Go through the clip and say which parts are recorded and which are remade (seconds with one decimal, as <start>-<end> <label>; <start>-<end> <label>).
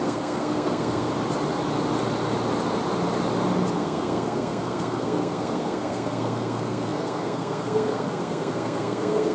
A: 0.0-1.1 remade; 1.1-3.7 recorded; 3.7-9.3 remade